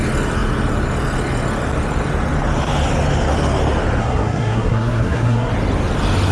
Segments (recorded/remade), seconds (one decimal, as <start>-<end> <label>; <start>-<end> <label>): 0.0-4.0 recorded; 4.0-5.5 remade; 5.5-6.3 recorded